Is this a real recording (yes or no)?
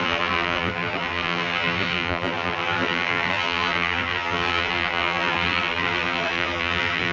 no